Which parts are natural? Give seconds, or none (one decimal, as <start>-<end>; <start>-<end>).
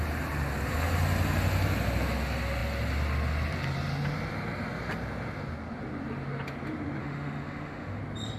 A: 0.0-7.0; 8.0-8.4